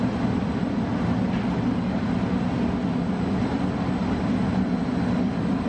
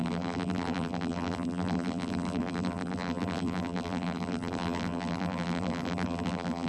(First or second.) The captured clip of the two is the first